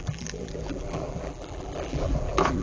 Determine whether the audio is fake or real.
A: fake